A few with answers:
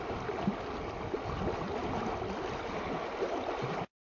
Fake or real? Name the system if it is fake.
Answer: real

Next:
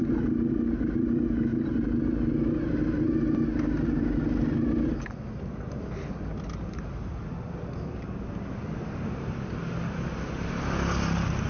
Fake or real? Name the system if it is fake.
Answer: real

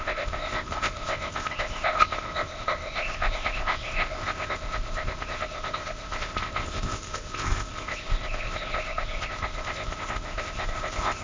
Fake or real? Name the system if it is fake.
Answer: fake, codec, ZipCodec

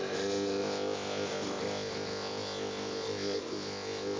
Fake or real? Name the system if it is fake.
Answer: fake, codec, ZipCodec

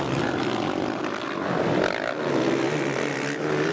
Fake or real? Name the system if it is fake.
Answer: real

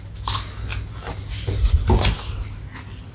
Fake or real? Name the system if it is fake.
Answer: real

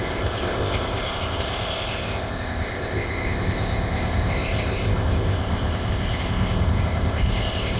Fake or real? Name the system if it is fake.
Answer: fake, codec, ZipCodec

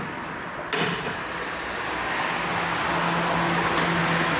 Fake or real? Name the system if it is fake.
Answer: real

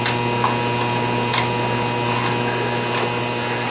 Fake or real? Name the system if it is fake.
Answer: real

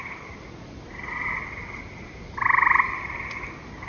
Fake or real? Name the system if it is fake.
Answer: real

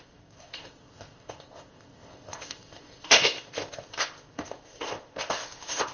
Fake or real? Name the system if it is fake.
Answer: fake, codec, ZipCodec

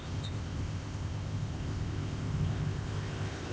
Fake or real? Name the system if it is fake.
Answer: fake, codec, ZipCodec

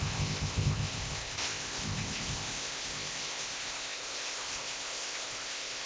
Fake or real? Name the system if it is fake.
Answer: fake, codec, ZipCodec